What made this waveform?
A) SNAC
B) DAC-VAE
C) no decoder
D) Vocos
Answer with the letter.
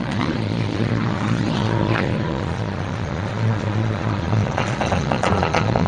D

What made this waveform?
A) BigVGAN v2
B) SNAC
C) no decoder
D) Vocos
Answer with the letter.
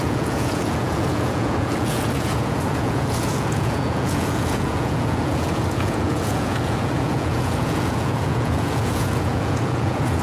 D